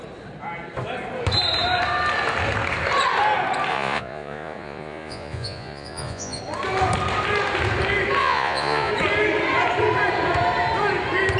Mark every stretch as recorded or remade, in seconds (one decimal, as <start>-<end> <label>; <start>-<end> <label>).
0.0-3.7 recorded; 3.7-6.4 remade; 6.4-8.2 recorded; 8.2-8.9 remade; 8.9-11.4 recorded